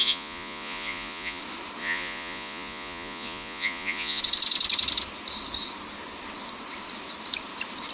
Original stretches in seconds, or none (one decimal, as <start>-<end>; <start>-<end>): 1.4-1.8; 4.2-7.9